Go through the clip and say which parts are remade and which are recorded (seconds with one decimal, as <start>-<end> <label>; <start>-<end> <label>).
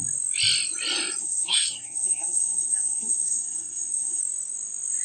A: 0.0-1.2 recorded; 1.2-4.2 remade; 4.2-5.0 recorded